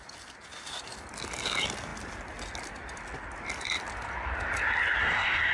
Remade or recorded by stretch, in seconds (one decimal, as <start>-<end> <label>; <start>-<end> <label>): 0.0-5.0 recorded; 5.0-5.5 remade